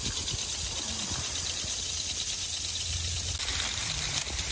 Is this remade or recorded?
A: recorded